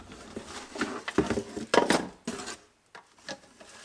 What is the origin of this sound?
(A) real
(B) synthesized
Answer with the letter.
A